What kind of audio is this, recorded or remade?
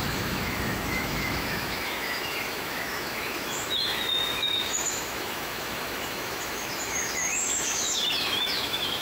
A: remade